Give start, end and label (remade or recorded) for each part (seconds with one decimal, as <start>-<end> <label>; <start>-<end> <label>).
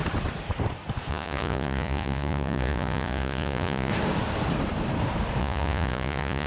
0.0-1.1 recorded; 1.1-3.9 remade; 3.9-5.4 recorded; 5.4-6.5 remade